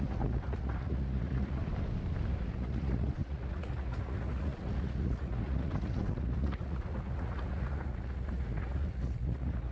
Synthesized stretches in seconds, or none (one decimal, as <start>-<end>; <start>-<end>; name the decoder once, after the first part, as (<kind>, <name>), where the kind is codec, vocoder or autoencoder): 0.0-1.6 (vocoder, Vocos); 2.4-9.7